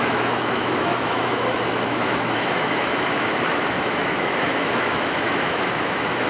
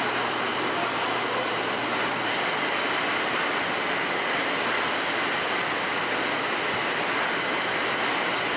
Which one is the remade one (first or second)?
first